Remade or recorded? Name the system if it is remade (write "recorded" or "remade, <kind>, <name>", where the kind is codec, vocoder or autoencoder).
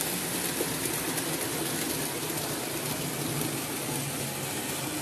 recorded